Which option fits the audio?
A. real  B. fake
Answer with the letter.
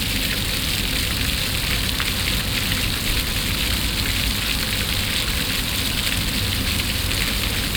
A